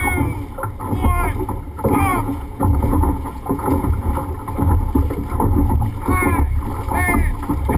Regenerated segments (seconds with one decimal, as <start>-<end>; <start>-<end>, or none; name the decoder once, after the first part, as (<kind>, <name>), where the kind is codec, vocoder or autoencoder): 2.1-4.1 (vocoder, Vocos)